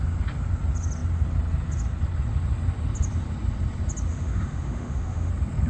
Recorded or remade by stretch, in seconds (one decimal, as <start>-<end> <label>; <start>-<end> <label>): 0.0-4.1 recorded; 4.1-5.3 remade; 5.3-5.7 recorded